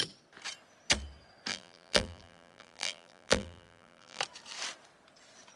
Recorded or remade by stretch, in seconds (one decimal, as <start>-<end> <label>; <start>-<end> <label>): 0.0-1.5 recorded; 1.5-4.2 remade; 4.2-5.6 recorded